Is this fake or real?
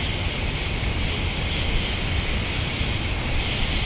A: real